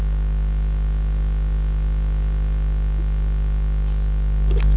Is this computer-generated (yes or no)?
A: no